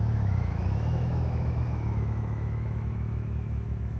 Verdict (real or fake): fake